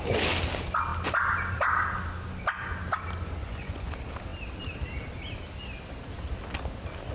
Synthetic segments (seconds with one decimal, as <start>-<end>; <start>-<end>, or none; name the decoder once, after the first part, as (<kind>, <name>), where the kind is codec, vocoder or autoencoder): 3.4-3.9 (vocoder, Vocos)